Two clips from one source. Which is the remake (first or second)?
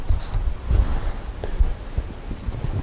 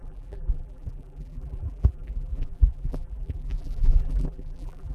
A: second